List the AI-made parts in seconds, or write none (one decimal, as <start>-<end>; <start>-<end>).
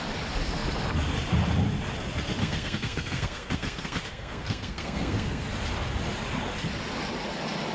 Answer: 2.4-5.5